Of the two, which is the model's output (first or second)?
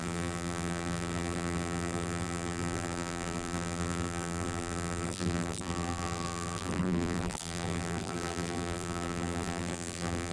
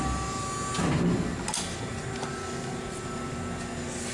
first